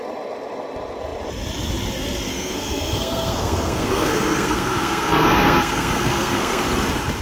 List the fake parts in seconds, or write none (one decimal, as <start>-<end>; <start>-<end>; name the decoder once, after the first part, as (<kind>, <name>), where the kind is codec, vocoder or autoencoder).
2.3-6.6 (codec, SNAC)